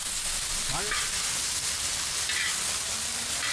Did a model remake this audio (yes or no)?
no